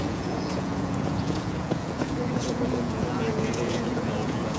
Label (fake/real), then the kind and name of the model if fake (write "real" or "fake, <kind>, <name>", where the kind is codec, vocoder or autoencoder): fake, vocoder, Vocos